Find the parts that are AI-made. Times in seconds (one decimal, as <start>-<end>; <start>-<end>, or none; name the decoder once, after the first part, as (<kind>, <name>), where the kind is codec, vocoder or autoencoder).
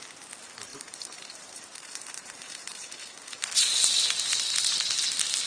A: 0.7-3.5 (vocoder, BigVGAN v2)